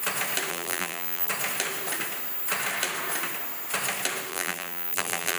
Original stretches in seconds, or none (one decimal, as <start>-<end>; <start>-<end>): 0.0-0.5; 1.3-4.3